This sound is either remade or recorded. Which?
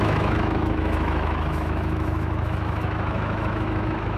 remade